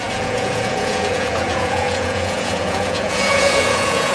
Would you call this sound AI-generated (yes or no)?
yes